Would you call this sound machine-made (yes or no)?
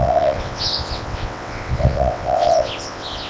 yes